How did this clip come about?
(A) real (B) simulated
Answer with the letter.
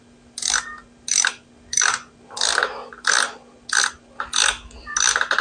A